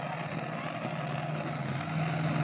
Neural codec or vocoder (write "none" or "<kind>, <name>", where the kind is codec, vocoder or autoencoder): none